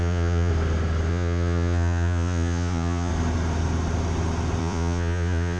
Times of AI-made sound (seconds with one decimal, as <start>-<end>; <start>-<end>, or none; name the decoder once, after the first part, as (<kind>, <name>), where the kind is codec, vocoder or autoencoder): 0.0-0.5 (vocoder, Vocos); 1.1-3.1; 4.6-5.6